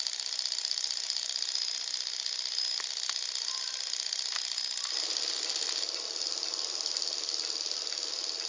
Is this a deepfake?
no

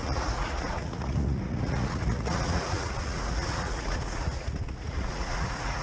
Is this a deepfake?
yes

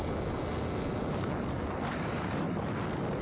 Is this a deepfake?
no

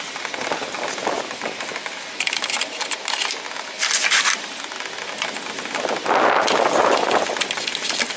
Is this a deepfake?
no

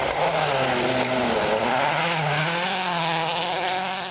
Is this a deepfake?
no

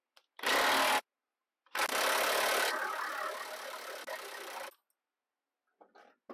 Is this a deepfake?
no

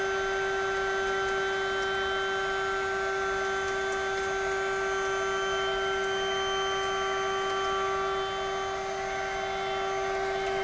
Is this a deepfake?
no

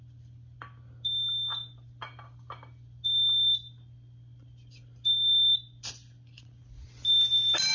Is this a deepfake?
no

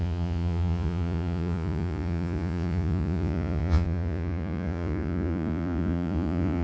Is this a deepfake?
yes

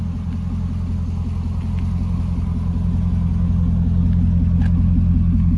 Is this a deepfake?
no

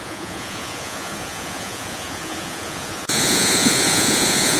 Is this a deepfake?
yes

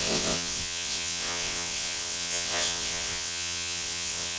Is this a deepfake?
yes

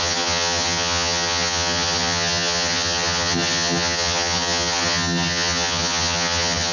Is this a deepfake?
yes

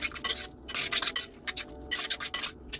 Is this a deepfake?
no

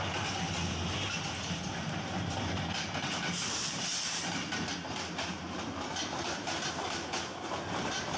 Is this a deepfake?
no